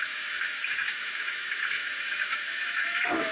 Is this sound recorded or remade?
remade